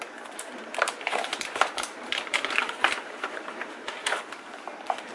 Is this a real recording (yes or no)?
no